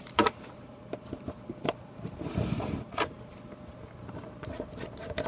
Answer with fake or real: fake